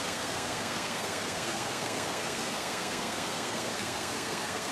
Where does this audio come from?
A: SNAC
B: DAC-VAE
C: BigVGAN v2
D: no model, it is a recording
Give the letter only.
A